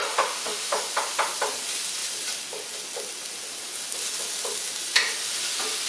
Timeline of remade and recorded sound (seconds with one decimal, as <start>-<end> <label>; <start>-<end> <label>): 0.0-0.9 remade; 0.9-5.9 recorded